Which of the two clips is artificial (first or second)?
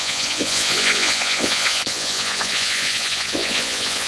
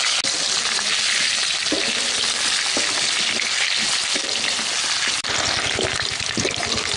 first